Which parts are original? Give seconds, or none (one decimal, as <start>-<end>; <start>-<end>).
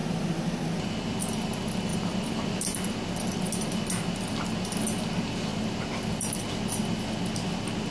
1.2-1.9; 2.9-5.5; 6.5-7.9